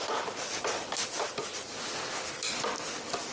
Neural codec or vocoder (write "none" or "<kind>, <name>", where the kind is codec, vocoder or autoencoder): none